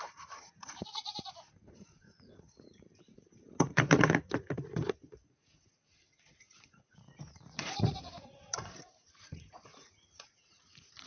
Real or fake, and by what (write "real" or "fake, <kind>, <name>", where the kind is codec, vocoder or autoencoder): fake, vocoder, Vocos